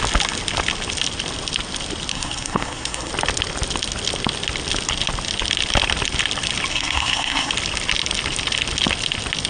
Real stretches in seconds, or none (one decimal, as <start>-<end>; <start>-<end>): 0.0-2.1; 3.1-6.7; 7.5-9.5